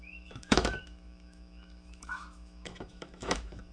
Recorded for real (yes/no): no